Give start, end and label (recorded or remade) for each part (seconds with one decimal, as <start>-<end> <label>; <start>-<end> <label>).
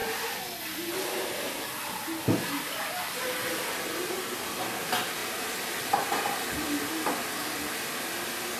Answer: 0.0-8.6 recorded